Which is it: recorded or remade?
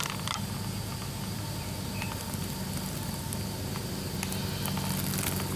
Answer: recorded